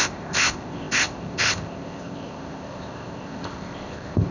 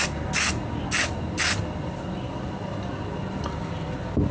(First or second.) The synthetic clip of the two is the first